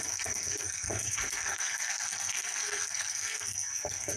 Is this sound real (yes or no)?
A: no